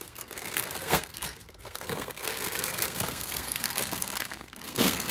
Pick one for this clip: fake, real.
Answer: fake